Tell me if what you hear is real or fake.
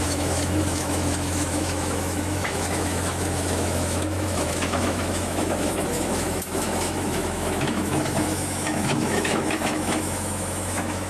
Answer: fake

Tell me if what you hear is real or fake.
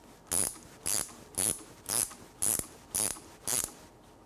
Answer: real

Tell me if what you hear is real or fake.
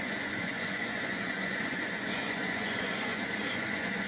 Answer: fake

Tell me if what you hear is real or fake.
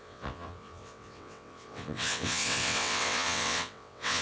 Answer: fake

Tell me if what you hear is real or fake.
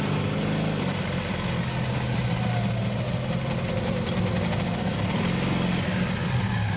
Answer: real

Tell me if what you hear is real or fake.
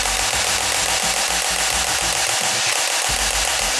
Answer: real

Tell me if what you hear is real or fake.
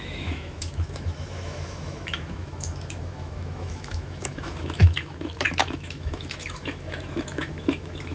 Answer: fake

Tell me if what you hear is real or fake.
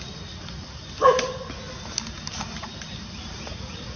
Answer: real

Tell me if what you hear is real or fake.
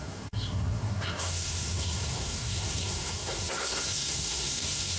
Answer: fake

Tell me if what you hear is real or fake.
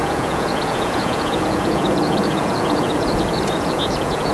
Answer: fake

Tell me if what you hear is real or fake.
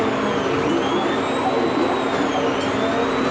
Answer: real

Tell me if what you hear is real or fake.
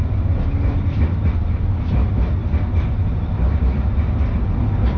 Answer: real